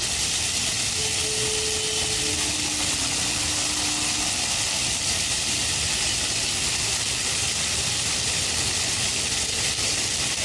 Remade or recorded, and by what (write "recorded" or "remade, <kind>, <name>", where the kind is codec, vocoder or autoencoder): recorded